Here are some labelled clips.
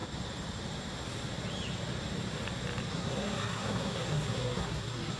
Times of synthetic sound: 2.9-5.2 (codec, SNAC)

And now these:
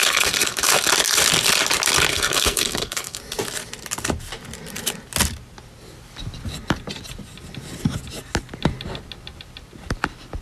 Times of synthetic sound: 0.0-0.8 (codec, SNAC); 2.1-3.2

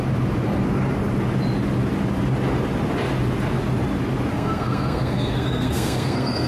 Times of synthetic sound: 4.3-6.5 (codec, SNAC)

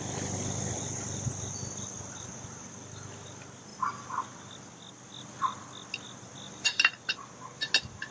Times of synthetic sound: none

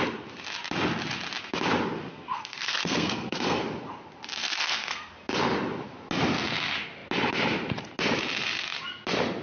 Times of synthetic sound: 2.1-3.6 (codec, SNAC); 4.4-5.1

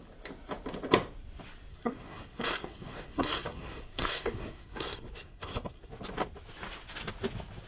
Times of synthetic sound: 1.7-5.9 (codec, SNAC)